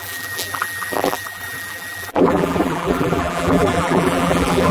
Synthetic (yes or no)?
yes